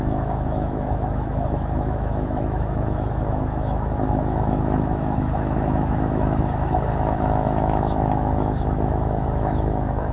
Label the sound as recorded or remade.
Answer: remade